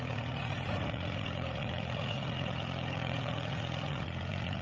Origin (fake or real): fake